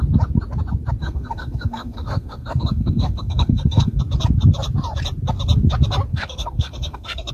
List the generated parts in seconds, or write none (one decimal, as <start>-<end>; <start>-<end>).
1.0-4.0; 6.1-7.3